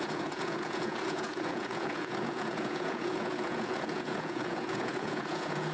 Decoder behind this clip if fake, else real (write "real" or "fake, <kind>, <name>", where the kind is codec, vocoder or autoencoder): fake, vocoder, Vocos